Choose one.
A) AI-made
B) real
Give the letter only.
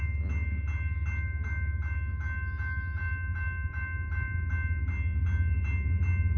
B